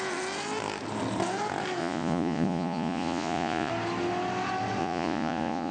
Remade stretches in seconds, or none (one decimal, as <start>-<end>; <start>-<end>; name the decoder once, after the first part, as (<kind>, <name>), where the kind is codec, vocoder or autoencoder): 1.8-3.7 (vocoder, Vocos); 4.8-5.7